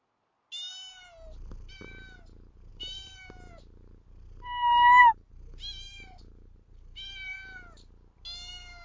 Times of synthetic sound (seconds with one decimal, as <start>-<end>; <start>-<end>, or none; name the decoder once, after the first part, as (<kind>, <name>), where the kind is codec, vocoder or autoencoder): 2.7-3.5 (vocoder, BigVGAN v2)